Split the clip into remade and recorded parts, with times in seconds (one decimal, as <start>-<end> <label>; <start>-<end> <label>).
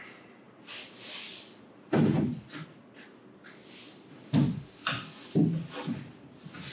0.0-1.3 recorded; 1.3-2.5 remade; 2.5-3.6 recorded; 3.6-4.1 remade; 4.1-6.7 recorded